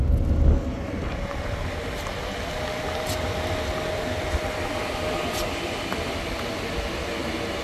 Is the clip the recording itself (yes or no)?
yes